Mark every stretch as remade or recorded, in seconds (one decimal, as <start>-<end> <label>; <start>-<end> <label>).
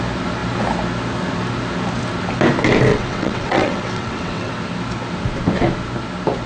0.0-2.9 recorded; 2.9-4.5 remade; 4.5-6.5 recorded